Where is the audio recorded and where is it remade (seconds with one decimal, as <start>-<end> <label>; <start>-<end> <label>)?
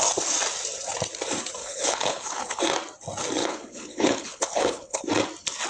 0.0-1.6 recorded; 1.6-2.6 remade; 2.6-3.4 recorded; 3.4-5.0 remade; 5.0-5.7 recorded